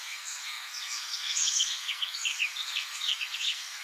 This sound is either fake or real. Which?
fake